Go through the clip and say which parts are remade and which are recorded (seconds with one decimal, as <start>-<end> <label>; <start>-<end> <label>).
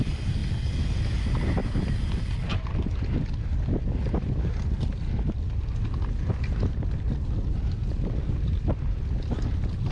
0.0-9.9 recorded